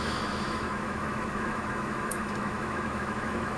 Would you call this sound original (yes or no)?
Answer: no